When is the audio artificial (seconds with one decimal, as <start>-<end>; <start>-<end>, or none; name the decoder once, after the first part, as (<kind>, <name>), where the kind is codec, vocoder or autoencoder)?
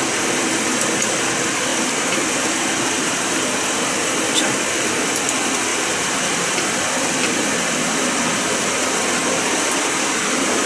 5.7-10.7 (vocoder, BigVGAN v2)